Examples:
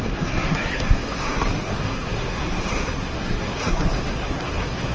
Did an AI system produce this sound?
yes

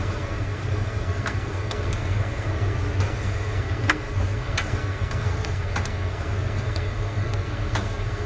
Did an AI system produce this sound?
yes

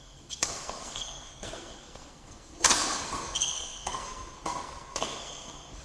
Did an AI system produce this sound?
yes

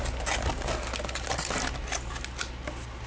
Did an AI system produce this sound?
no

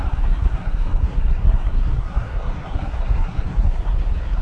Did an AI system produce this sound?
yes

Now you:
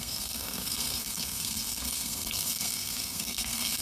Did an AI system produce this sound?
yes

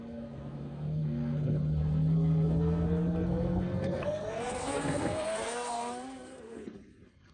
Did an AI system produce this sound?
yes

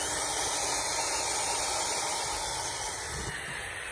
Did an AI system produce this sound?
no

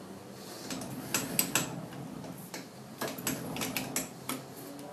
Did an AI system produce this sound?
no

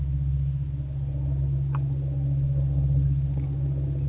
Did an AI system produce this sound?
no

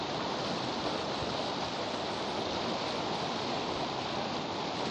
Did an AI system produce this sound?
no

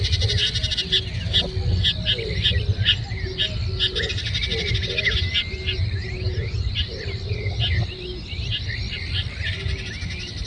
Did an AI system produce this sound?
no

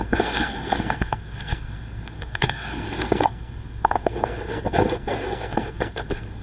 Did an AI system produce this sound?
yes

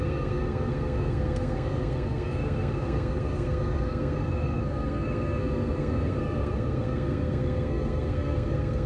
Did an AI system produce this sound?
yes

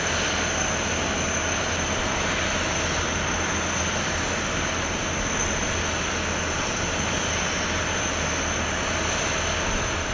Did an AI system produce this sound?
no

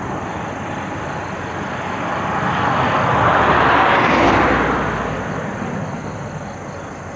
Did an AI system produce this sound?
no